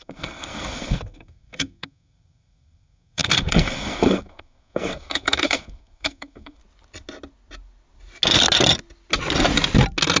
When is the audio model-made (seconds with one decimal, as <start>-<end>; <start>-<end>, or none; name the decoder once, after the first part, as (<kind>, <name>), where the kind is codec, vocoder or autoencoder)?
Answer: 0.0-6.6 (codec, SNAC)